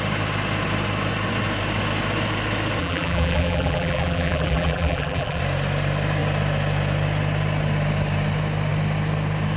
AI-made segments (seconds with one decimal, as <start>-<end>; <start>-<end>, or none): 2.8-5.4